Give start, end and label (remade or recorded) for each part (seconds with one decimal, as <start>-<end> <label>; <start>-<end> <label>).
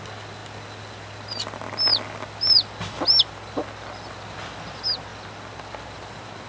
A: 0.0-6.5 recorded